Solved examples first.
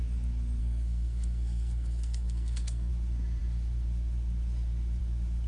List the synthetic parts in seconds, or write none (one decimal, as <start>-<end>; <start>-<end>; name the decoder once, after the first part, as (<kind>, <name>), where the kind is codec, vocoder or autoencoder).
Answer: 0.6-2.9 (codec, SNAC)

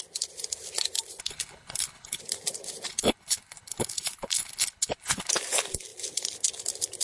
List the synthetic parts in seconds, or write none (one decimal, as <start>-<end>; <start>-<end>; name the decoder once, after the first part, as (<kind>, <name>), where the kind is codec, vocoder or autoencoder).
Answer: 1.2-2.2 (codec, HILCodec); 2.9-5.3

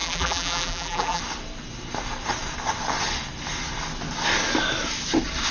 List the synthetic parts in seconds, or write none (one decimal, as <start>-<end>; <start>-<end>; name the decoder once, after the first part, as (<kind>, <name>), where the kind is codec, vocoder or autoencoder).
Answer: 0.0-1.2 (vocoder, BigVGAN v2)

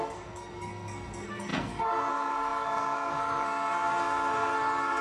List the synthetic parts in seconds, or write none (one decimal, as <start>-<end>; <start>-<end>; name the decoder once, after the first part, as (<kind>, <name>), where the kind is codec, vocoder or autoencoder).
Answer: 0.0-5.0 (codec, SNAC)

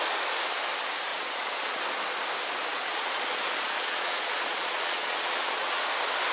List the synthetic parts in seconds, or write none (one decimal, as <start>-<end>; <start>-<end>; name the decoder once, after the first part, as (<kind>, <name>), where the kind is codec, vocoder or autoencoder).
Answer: 1.1-1.8 (vocoder, Vocos); 2.7-5.8

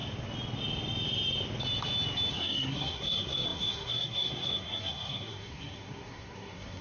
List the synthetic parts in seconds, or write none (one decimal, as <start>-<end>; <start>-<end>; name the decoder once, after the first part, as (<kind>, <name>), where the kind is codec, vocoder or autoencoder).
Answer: 2.3-6.8 (codec, SNAC)